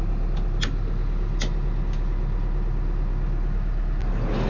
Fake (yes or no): no